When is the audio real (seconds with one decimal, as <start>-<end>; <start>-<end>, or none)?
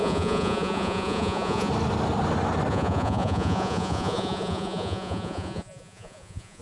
1.7-2.7